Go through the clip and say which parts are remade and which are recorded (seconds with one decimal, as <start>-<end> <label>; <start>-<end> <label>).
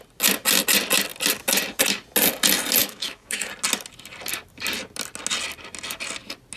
0.0-2.8 recorded; 2.8-3.5 remade; 3.5-6.6 recorded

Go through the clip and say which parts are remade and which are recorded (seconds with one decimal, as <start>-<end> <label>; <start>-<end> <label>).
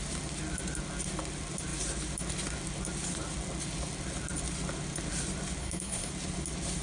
0.0-5.6 recorded; 5.6-6.1 remade; 6.1-6.8 recorded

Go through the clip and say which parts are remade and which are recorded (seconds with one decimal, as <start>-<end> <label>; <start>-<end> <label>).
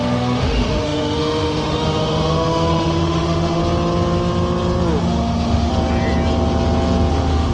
0.0-3.6 remade; 3.6-5.0 recorded; 5.0-5.7 remade; 5.7-7.1 recorded; 7.1-7.5 remade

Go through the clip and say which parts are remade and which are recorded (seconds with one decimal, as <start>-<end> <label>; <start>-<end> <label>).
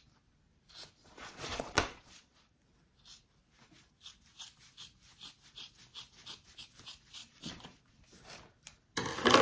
0.0-1.0 recorded; 1.0-2.6 remade; 2.6-7.2 recorded; 7.2-8.0 remade; 8.0-9.4 recorded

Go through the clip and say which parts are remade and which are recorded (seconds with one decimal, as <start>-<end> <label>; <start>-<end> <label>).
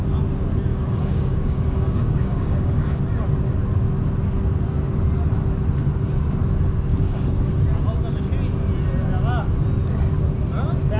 0.0-0.7 recorded; 0.7-3.0 remade; 3.0-6.9 recorded; 6.9-7.5 remade; 7.5-11.0 recorded